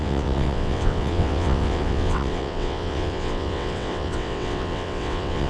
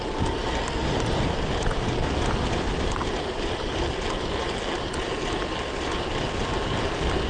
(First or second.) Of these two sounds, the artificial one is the first